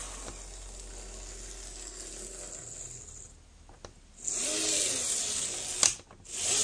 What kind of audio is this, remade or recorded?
recorded